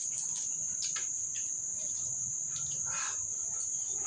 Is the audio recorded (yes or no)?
yes